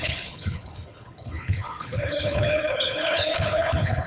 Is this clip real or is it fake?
fake